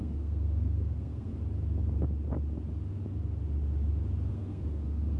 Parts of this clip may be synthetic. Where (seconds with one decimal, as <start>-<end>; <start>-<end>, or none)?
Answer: 0.0-1.3; 4.3-5.2